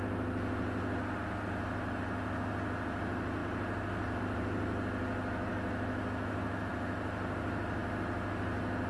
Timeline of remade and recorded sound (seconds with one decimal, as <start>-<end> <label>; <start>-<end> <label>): 0.0-5.5 recorded; 5.5-6.7 remade; 6.7-8.9 recorded